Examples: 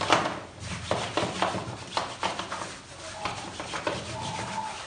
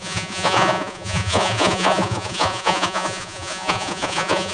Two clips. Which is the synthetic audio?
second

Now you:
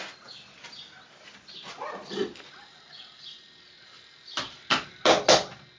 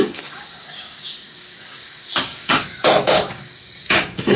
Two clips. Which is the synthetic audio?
second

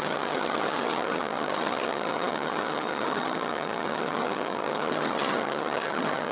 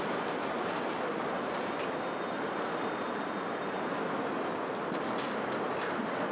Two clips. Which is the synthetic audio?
first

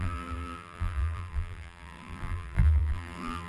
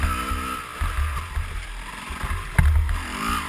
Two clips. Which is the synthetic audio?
first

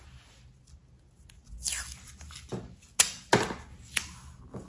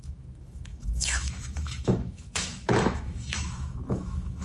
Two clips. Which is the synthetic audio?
second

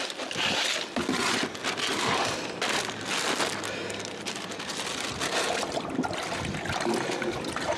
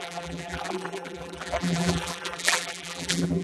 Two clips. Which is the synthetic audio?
second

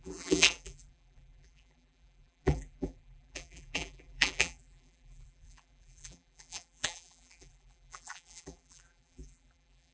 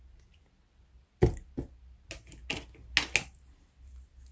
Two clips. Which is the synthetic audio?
first